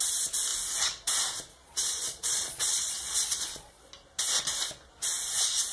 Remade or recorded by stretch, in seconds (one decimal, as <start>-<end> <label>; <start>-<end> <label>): 0.0-1.5 recorded; 1.5-3.9 remade; 3.9-5.7 recorded